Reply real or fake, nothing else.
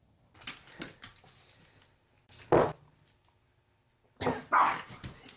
real